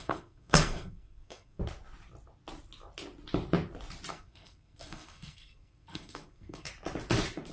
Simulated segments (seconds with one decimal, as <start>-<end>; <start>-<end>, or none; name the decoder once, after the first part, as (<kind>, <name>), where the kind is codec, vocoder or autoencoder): 0.0-1.6 (codec, SNAC); 4.1-6.7